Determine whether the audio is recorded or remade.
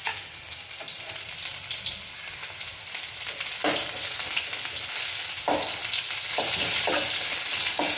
recorded